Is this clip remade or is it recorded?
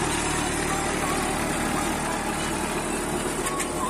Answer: recorded